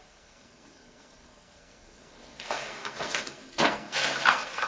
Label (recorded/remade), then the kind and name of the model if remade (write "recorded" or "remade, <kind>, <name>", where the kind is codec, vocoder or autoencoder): remade, codec, SNAC